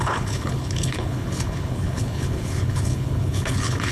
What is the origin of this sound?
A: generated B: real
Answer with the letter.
A